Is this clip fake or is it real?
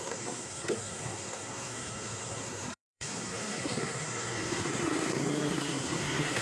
fake